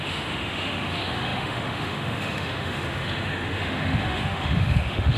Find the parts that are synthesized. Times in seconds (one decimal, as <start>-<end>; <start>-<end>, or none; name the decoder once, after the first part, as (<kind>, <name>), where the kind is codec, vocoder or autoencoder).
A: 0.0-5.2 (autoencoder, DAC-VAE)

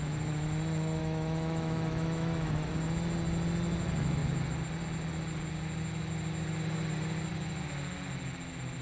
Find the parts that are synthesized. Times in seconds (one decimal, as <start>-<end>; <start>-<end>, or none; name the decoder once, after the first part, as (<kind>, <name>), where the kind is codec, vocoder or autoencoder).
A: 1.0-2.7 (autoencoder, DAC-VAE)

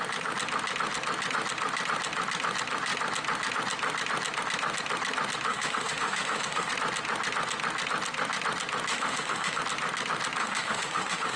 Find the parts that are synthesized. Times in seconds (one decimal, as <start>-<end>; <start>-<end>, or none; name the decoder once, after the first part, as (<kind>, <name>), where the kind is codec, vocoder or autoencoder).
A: 5.5-6.7 (autoencoder, DAC-VAE); 8.9-9.6; 10.4-11.4

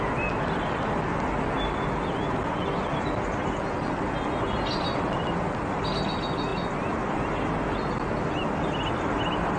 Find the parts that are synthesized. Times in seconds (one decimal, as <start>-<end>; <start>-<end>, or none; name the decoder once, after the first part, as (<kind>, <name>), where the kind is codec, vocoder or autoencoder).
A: none

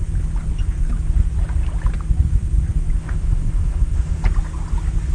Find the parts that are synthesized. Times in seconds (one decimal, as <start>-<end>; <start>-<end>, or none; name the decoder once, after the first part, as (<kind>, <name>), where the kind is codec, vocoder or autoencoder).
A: 3.0-4.2 (autoencoder, DAC-VAE)